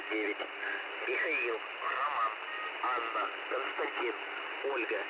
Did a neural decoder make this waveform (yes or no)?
no